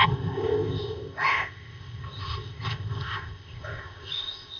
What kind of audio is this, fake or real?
fake